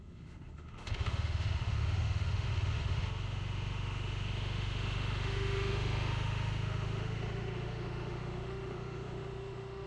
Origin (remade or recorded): remade